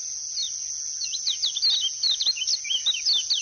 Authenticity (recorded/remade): recorded